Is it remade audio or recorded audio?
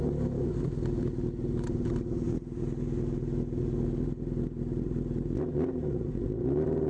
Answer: recorded